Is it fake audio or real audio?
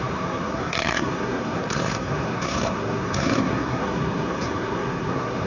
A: fake